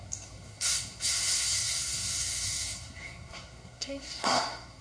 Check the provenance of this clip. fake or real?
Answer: fake